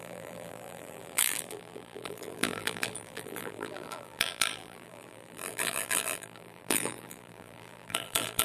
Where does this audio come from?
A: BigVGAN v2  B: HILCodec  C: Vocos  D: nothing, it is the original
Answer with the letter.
A